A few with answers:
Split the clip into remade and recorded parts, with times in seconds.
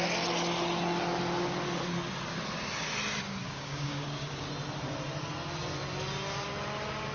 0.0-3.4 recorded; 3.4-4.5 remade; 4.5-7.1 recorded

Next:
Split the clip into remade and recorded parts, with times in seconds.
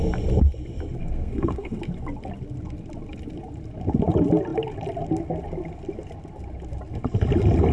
0.0-1.0 recorded; 1.0-1.8 remade; 1.8-7.7 recorded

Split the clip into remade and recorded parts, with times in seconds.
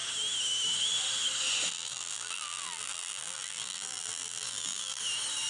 0.0-1.7 recorded; 1.7-5.0 remade; 5.0-5.5 recorded